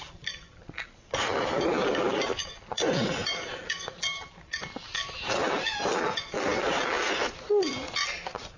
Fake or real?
real